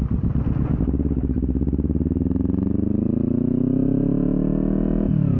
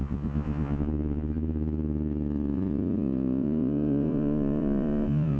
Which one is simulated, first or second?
second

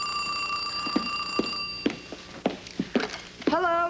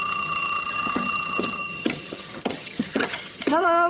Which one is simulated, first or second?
second